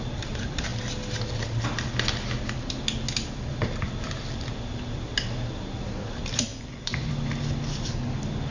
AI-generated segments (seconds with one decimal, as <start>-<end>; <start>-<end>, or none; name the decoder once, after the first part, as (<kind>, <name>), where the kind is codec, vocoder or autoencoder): 6.5-7.1 (vocoder, Vocos)